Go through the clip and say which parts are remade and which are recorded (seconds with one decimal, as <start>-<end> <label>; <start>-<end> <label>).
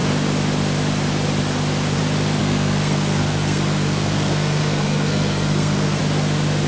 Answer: 0.0-2.4 recorded; 2.4-6.0 remade; 6.0-6.7 recorded